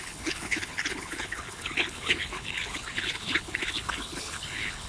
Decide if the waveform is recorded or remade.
remade